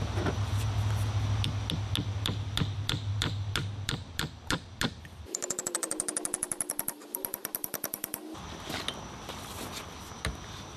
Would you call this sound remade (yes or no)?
no